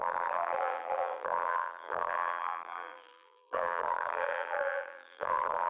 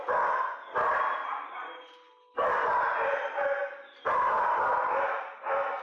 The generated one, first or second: first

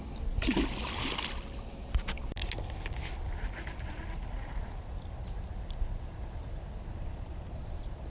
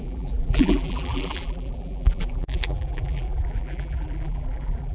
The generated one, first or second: second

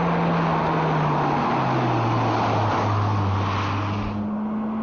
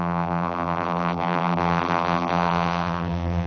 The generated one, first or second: second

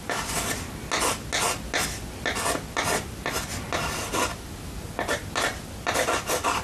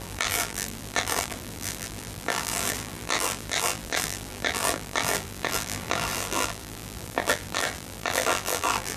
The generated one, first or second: second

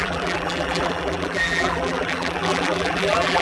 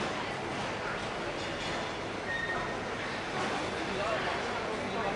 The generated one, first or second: first